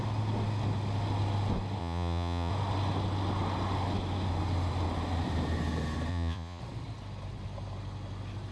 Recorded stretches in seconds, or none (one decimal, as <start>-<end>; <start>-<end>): 0.0-1.8; 2.5-6.1; 6.6-8.5